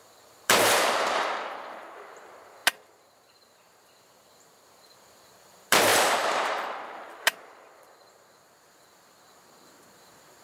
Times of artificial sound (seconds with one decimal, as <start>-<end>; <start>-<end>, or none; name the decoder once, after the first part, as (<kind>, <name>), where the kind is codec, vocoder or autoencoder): 0.0-10.4 (vocoder, BigVGAN v2)